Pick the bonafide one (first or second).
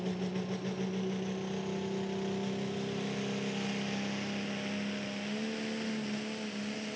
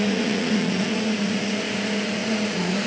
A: first